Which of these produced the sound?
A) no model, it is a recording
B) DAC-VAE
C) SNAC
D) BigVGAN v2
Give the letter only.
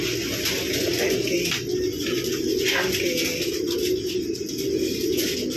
A